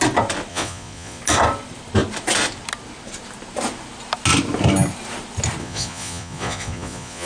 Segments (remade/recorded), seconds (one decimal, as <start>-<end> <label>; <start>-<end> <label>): 0.0-0.5 recorded; 0.5-1.2 remade; 1.2-5.6 recorded; 5.6-7.3 remade